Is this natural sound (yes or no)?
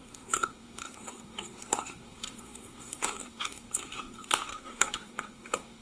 no